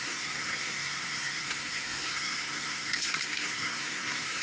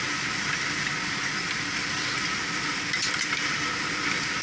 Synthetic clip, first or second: first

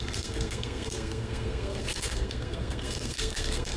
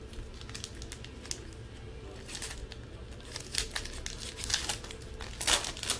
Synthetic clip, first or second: first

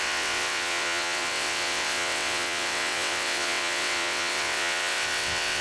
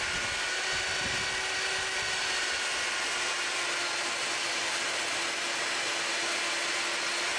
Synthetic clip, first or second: first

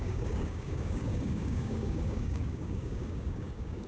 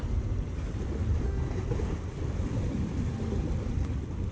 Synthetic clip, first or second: first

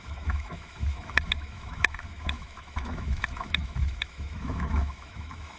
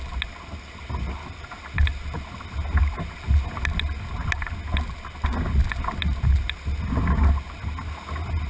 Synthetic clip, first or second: first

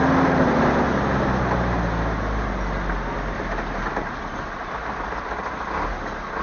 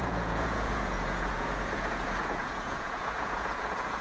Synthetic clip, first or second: second